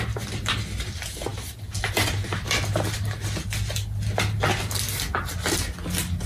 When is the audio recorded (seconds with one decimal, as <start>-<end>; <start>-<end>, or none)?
0.0-6.3